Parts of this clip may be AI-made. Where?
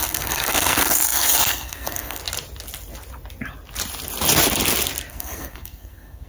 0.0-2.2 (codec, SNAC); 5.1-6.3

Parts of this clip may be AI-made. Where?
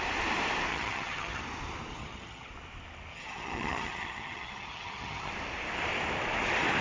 0.7-1.4 (vocoder, HiFi-GAN); 1.9-2.5; 3.1-5.3